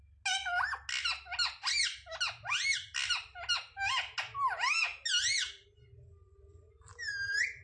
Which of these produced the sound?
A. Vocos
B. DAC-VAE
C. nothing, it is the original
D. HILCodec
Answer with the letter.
C